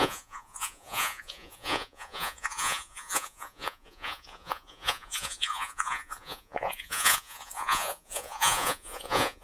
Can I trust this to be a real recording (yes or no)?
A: no